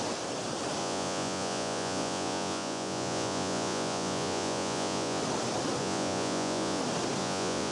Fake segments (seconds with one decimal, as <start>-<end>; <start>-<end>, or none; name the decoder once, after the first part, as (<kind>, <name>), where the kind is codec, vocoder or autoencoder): 0.8-5.2 (vocoder, Vocos); 5.8-6.8; 7.2-7.7